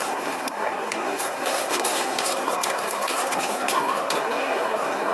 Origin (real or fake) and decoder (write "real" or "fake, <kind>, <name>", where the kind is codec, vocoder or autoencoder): fake, codec, SNAC